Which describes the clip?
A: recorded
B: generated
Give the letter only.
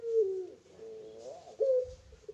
A